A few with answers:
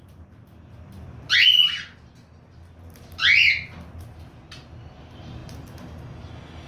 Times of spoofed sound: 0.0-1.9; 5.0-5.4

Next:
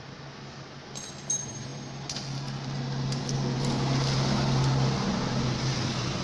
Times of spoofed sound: none

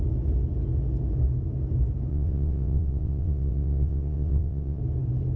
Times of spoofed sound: 2.1-4.8

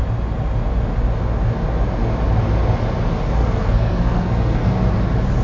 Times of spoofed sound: 3.4-4.7